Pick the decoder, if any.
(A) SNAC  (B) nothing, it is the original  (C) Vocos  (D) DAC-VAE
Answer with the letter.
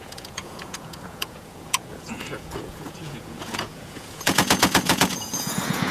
C